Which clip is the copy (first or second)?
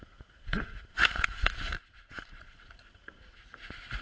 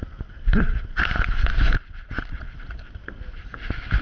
first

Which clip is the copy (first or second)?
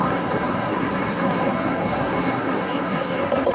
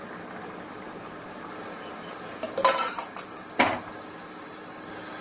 first